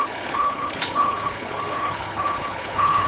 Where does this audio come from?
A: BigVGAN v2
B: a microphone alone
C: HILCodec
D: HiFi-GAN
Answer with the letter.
C